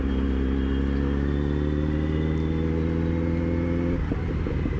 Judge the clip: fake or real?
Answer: real